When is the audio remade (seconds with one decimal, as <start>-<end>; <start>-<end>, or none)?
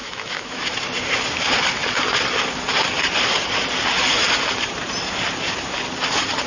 0.0-0.6